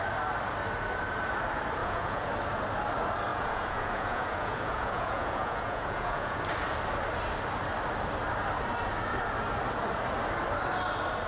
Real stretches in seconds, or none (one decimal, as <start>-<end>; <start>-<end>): 0.0-1.8; 2.3-3.3; 6.4-11.3